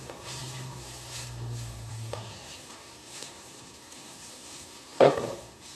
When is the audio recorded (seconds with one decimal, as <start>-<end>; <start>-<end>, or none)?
none